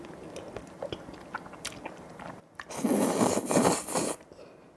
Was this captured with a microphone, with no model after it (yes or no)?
yes